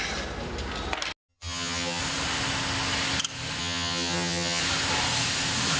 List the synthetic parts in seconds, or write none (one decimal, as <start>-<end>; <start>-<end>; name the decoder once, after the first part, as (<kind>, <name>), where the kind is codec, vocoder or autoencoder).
1.3-2.0 (vocoder, HiFi-GAN); 3.6-4.6